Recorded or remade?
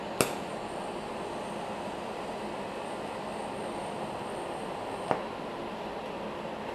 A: recorded